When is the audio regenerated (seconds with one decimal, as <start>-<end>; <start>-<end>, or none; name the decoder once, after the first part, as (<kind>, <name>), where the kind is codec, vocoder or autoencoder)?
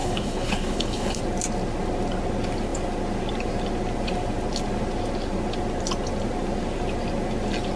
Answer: 0.0-1.2 (codec, HILCodec)